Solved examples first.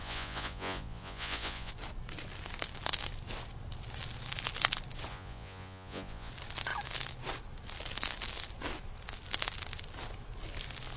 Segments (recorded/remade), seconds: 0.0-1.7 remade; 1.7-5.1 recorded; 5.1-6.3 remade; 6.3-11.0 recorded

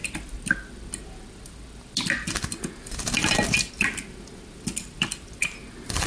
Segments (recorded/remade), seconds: 0.0-6.1 recorded

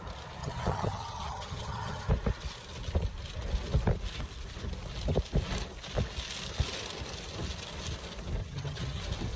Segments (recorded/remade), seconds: 0.0-0.4 recorded; 0.4-2.1 remade; 2.1-8.4 recorded; 8.4-9.0 remade; 9.0-9.4 recorded

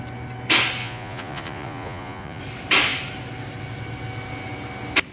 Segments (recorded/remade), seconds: 0.0-0.8 recorded; 0.8-2.4 remade; 2.4-5.1 recorded

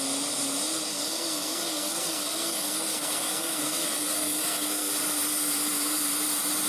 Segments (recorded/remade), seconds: 0.0-0.9 recorded; 0.9-4.9 remade; 4.9-6.7 recorded